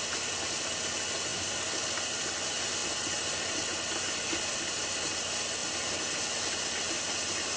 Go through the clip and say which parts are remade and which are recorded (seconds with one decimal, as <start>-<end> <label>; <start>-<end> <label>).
0.0-7.6 recorded